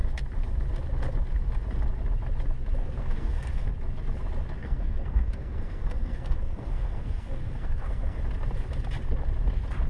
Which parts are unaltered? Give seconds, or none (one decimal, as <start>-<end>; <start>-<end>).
0.0-2.8; 3.7-4.6; 8.2-9.9